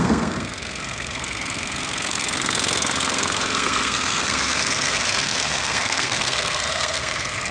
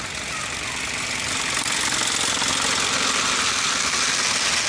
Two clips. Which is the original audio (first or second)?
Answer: second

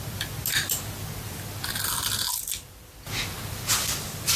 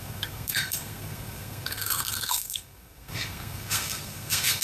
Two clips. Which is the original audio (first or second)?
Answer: first